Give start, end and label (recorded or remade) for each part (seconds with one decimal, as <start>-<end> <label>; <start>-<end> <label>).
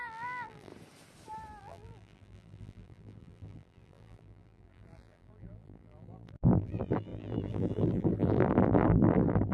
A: 0.0-0.7 remade; 0.7-1.6 recorded; 1.6-9.5 remade